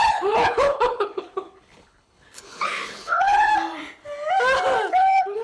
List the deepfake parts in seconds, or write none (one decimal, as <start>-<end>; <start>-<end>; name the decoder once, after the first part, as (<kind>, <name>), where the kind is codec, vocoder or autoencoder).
0.0-3.5 (codec, HILCodec); 4.9-5.4